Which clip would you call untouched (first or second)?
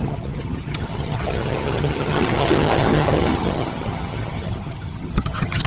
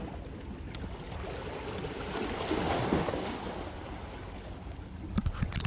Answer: second